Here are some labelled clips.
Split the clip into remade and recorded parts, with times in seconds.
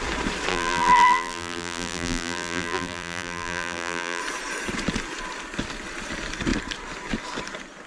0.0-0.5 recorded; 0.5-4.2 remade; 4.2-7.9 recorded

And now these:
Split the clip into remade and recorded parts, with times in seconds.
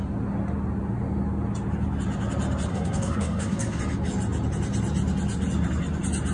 0.0-2.7 recorded; 2.7-3.8 remade; 3.8-6.3 recorded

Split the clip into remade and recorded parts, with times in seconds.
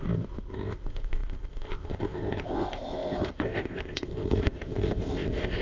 0.0-5.6 remade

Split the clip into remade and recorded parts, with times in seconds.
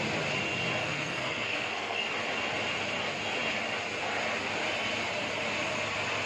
0.0-0.8 recorded; 0.8-2.1 remade; 2.1-6.3 recorded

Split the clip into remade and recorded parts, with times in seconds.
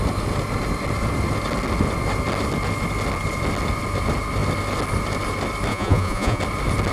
0.0-5.7 recorded; 5.7-6.4 remade; 6.4-6.9 recorded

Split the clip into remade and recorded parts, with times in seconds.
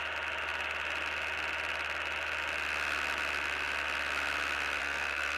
0.0-4.8 recorded; 4.8-5.4 remade